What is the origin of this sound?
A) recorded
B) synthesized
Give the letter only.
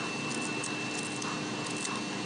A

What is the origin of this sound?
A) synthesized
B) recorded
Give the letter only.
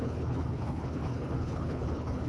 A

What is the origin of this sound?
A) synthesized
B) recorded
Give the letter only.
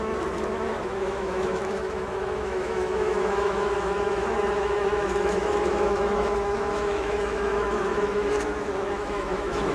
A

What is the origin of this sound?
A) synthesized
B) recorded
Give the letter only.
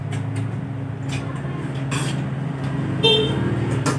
B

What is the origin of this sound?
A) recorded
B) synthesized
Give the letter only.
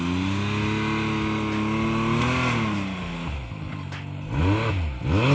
A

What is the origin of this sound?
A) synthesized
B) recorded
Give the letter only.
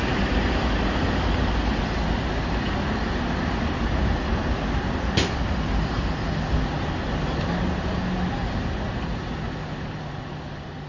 B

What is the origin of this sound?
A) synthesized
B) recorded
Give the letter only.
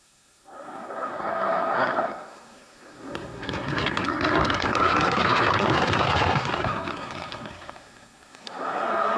A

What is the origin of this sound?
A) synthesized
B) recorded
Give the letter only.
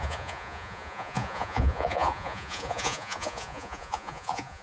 A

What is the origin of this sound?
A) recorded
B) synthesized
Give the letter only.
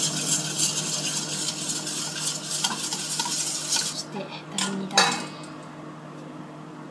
A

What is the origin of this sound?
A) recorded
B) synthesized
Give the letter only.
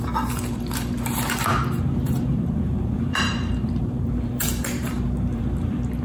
B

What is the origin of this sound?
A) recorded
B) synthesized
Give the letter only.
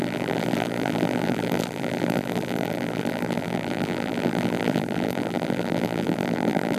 B